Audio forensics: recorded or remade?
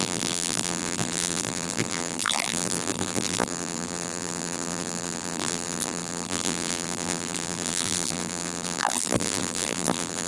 remade